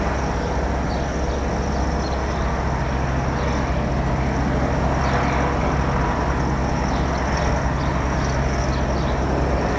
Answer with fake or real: real